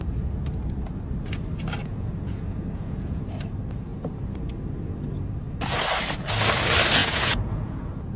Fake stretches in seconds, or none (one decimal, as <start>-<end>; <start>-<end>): 1.8-3.2; 7.0-8.2